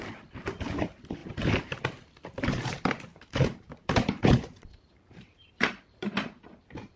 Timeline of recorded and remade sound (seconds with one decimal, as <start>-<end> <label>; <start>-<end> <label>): 0.0-1.2 recorded; 1.2-1.8 remade; 1.8-3.1 recorded; 3.1-6.4 remade; 6.4-7.0 recorded